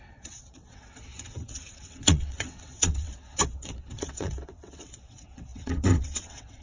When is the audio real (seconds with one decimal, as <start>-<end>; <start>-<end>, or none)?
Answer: none